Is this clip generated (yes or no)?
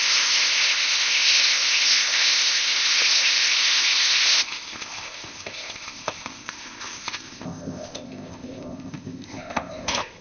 yes